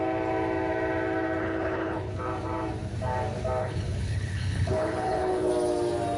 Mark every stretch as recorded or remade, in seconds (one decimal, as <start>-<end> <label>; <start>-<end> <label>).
0.0-1.4 recorded; 1.4-2.2 remade; 2.2-3.6 recorded; 3.6-5.5 remade; 5.5-6.2 recorded